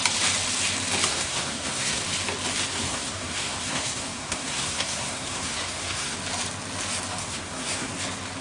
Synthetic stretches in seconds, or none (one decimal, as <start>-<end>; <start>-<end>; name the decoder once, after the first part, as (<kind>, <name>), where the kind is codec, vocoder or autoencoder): 1.1-2.0 (codec, SNAC); 2.7-6.2; 7.2-7.9